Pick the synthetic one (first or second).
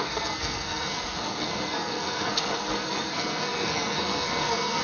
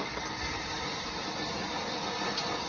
first